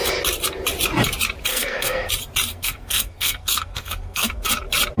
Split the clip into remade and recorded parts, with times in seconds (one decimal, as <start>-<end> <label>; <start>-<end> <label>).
0.0-1.5 recorded; 1.5-2.1 remade; 2.1-2.5 recorded; 2.5-4.5 remade; 4.5-5.0 recorded